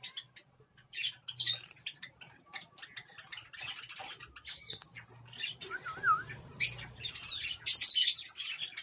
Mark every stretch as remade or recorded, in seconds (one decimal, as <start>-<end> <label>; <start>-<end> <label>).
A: 0.0-1.0 recorded; 1.0-2.1 remade; 2.1-6.5 recorded; 6.5-7.3 remade; 7.3-8.8 recorded